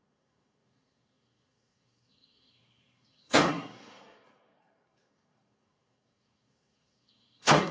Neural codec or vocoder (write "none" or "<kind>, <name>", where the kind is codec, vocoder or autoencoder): codec, SNAC